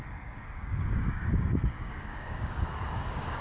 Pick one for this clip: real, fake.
fake